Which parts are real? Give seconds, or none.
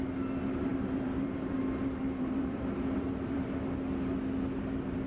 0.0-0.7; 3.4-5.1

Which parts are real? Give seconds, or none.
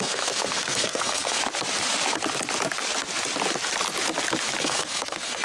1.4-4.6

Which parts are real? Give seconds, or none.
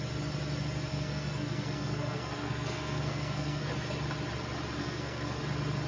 0.0-0.9; 3.7-4.8; 5.4-5.9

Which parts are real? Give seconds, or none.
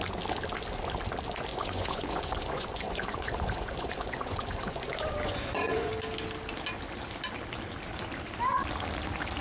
0.0-1.5; 5.9-9.4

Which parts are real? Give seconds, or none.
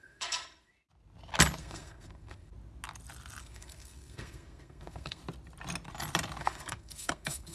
0.7-1.6; 2.5-3.4; 5.2-6.4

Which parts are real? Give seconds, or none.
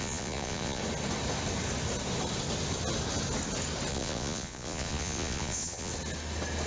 0.8-3.9; 5.9-6.7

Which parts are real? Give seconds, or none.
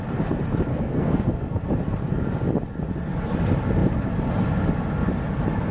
0.0-0.7; 1.7-5.7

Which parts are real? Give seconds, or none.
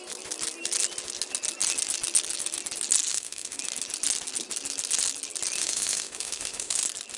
0.0-3.1; 3.6-5.6; 6.8-7.2